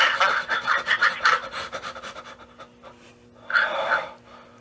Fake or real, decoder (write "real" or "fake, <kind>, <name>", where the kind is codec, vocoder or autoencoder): real